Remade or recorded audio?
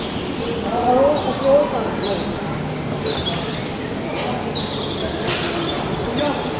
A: recorded